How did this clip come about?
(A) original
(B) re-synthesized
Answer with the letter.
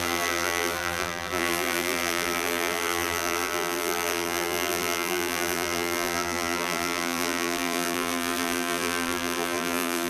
B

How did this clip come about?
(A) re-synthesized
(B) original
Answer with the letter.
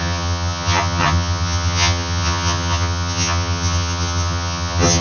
A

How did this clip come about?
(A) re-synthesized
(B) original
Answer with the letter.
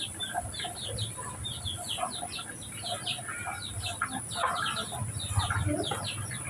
B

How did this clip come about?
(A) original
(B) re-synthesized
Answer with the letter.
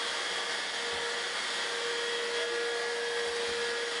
A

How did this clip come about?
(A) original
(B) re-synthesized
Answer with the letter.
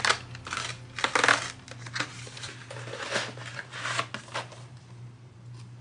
A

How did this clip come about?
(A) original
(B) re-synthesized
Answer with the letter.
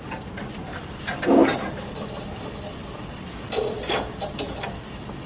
A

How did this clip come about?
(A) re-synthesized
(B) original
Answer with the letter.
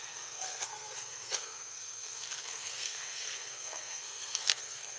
A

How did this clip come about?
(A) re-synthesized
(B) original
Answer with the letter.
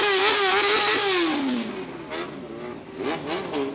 B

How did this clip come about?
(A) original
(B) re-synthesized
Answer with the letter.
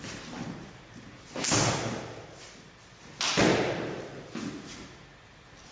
A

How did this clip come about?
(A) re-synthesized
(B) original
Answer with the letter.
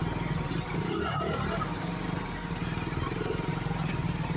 A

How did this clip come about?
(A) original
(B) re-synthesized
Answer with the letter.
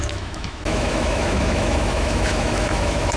B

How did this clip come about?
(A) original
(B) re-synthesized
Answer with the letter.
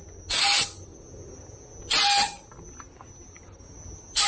A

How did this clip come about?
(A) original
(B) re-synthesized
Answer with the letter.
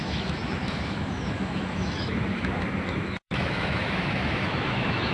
B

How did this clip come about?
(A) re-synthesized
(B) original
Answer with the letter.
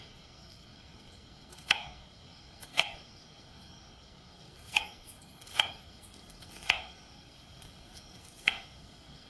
A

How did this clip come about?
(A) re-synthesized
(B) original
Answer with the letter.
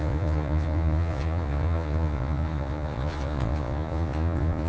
A